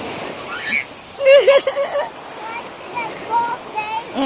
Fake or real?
real